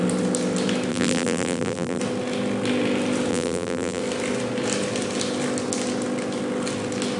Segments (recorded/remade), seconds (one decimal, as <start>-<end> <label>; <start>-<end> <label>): 0.0-0.9 recorded; 0.9-2.0 remade; 2.0-3.3 recorded; 3.3-4.0 remade; 4.0-7.2 recorded